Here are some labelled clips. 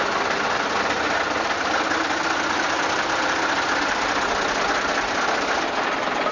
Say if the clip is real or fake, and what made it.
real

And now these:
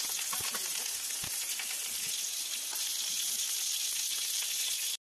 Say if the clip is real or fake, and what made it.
real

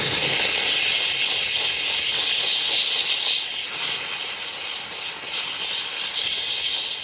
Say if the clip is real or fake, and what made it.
real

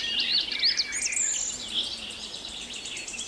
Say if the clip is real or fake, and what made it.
real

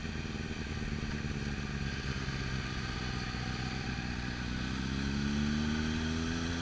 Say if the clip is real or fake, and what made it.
real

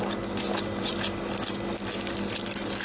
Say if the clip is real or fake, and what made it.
real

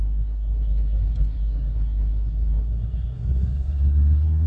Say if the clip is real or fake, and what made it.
fake, codec, SNAC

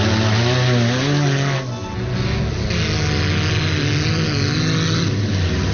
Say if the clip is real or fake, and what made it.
real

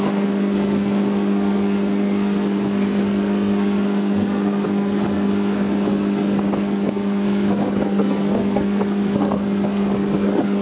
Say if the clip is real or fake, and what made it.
fake, codec, SNAC